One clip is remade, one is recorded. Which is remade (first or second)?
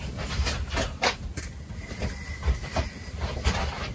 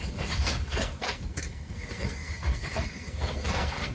second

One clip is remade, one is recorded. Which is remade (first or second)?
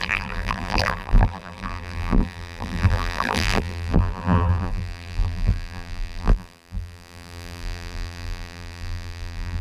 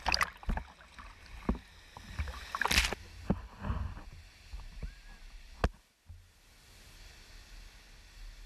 first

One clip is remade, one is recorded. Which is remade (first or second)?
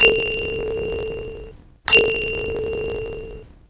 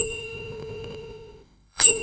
second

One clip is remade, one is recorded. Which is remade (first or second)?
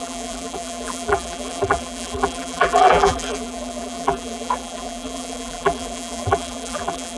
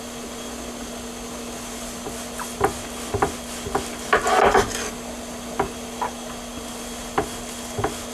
first